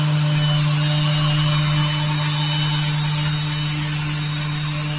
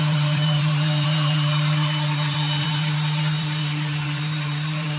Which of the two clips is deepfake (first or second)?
second